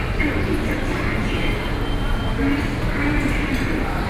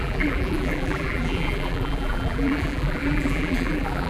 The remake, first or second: second